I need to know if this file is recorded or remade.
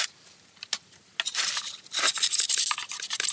recorded